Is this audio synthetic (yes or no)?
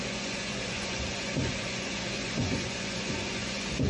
yes